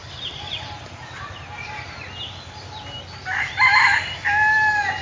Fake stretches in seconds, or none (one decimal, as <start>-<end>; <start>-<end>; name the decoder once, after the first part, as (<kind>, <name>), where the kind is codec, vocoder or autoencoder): none